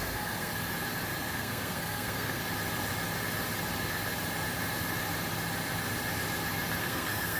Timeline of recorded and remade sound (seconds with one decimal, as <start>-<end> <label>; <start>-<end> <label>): 0.0-0.5 remade; 0.5-1.3 recorded; 1.3-2.4 remade; 2.4-6.8 recorded; 6.8-7.4 remade